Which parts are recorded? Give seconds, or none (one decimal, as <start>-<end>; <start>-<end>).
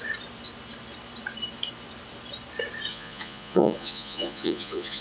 0.0-2.9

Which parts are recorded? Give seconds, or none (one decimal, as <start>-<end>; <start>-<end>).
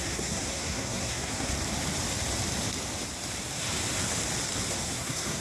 1.5-4.7